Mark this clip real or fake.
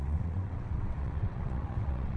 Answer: fake